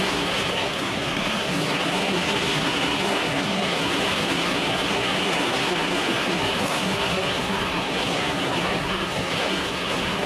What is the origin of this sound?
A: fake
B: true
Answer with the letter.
A